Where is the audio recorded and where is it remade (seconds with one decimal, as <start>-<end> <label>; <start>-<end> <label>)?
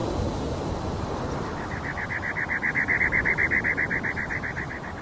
0.0-5.0 recorded